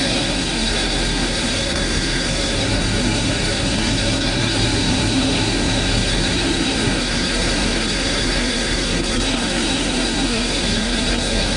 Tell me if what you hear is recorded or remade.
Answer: remade